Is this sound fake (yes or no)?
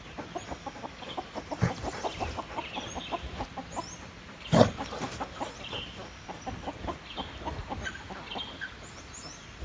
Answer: no